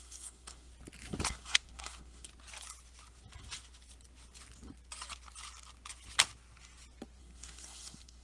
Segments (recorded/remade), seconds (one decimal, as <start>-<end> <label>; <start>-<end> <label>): 0.0-0.7 remade; 0.7-1.3 recorded; 1.3-2.3 remade; 2.3-7.2 recorded; 7.2-8.2 remade